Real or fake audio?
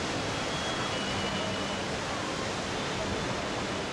real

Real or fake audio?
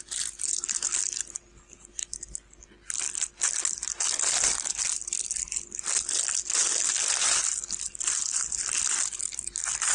real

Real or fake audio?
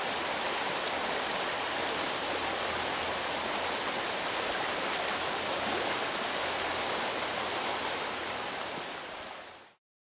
real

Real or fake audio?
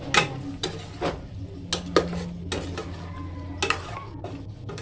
real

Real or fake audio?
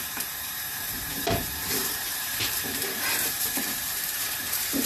fake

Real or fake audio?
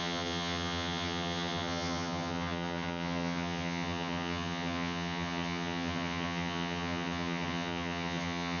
fake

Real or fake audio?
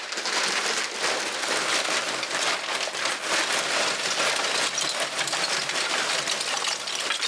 real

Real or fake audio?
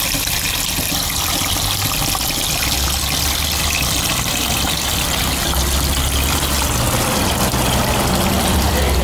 real